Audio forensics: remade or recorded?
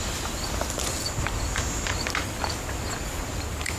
recorded